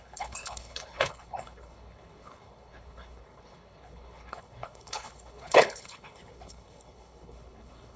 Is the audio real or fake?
fake